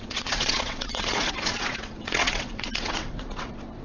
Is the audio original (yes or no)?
no